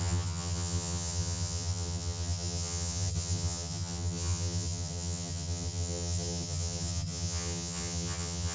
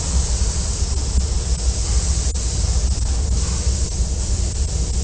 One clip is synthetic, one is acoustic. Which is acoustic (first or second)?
second